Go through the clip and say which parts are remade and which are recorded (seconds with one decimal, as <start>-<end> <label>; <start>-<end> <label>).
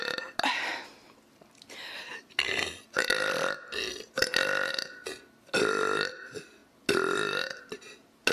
0.0-8.3 recorded